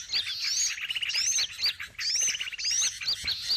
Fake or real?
real